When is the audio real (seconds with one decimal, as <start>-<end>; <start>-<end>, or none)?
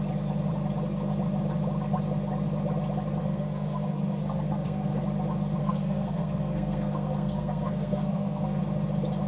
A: 0.0-3.2; 5.0-5.6; 8.6-9.3